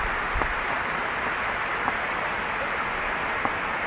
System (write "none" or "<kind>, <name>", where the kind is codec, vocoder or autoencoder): none